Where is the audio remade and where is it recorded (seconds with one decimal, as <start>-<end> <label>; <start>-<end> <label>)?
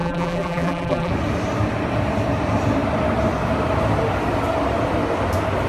0.0-1.1 remade; 1.1-5.7 recorded